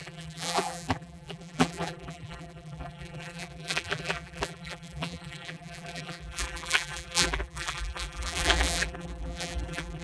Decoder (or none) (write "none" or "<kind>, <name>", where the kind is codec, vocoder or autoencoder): vocoder, BigVGAN v2